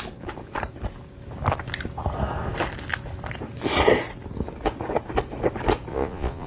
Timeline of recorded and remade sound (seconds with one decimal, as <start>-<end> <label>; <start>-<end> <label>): 0.0-5.9 recorded; 5.9-6.5 remade